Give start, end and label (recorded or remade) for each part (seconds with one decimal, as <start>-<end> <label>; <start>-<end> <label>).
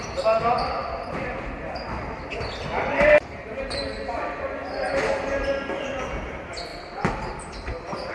0.0-6.7 recorded; 6.7-8.1 remade